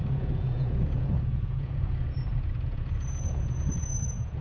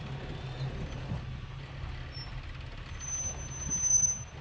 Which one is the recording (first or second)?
second